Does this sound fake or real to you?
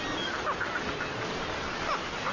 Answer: real